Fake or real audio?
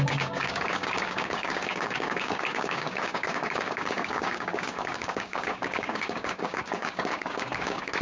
fake